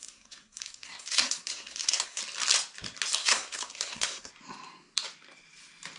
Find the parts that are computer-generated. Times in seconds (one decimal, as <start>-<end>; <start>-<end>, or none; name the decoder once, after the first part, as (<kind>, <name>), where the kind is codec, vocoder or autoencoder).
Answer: 0.0-2.2 (codec, SNAC); 3.2-4.3